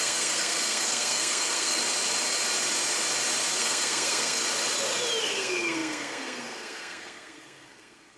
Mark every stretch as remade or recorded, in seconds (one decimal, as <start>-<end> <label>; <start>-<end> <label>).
0.0-1.8 remade; 1.8-3.6 recorded; 3.6-4.4 remade; 4.4-5.2 recorded; 5.2-8.2 remade